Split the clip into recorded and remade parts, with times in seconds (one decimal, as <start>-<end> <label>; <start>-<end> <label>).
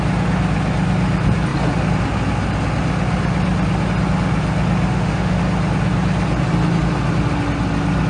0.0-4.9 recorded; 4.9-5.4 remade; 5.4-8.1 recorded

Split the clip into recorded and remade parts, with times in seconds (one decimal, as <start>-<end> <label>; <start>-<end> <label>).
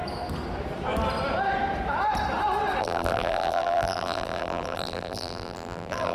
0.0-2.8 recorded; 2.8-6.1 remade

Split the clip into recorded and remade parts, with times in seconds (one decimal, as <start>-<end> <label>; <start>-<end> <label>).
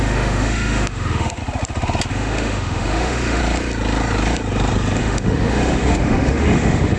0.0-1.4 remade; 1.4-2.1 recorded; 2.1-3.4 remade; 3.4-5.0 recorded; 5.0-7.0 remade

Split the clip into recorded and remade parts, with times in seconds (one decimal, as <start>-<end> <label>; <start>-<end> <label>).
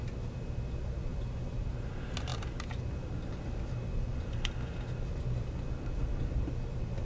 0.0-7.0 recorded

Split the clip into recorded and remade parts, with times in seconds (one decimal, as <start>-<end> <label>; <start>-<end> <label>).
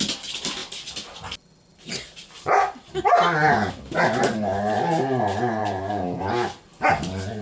0.0-5.6 recorded; 5.6-6.2 remade; 6.2-7.4 recorded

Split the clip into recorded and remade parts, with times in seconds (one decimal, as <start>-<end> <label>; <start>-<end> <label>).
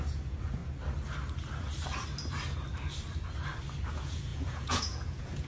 0.0-0.6 remade; 0.6-3.9 recorded; 3.9-5.5 remade